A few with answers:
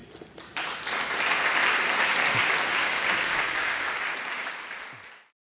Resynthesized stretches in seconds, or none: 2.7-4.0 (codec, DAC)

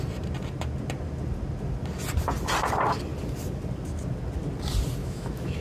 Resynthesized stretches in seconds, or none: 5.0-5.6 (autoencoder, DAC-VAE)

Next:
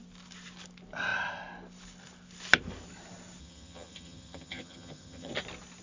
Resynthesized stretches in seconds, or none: 3.4-5.3 (vocoder, HiFi-GAN)

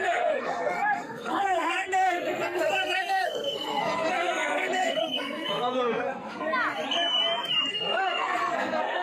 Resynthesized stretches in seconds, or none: 0.0-6.5 (codec, SNAC); 7.7-9.0

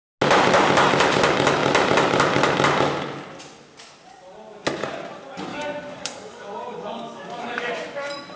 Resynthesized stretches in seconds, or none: 5.5-7.7 (codec, DAC)

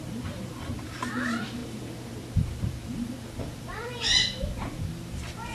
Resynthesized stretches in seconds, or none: 0.0-5.5 (vocoder, BigVGAN v2)

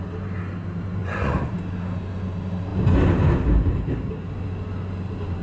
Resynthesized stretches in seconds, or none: 1.0-1.5 (vocoder, Vocos)

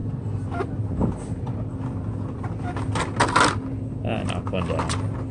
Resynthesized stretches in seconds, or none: none